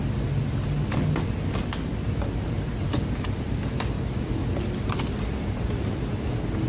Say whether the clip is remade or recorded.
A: recorded